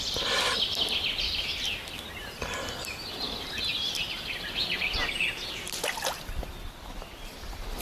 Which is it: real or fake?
real